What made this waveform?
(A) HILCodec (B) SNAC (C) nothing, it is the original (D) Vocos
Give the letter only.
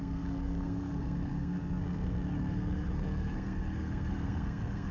B